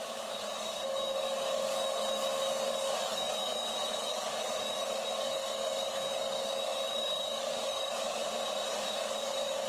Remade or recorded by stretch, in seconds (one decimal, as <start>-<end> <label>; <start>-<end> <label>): 0.0-8.2 remade; 8.2-8.7 recorded; 8.7-9.7 remade